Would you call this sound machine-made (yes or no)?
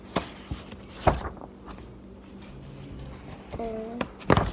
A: no